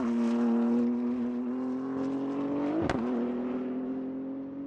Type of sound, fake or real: real